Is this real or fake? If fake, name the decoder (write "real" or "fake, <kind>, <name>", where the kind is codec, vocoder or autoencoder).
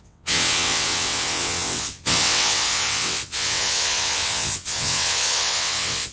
fake, vocoder, WaveNeXt